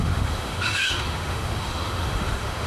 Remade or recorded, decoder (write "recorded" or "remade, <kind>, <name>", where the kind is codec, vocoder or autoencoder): remade, autoencoder, DAC-VAE